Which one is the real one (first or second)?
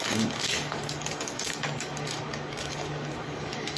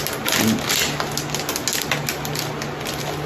second